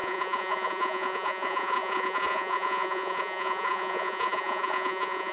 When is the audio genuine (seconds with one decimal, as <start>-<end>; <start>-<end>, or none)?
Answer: none